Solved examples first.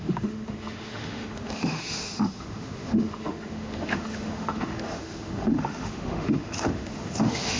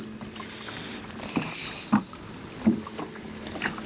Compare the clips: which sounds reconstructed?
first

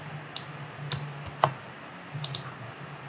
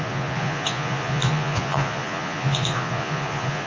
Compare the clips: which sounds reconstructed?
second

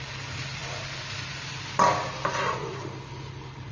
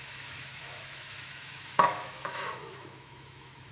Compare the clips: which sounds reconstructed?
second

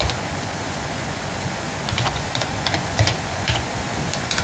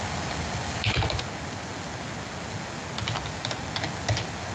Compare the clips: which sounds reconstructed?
first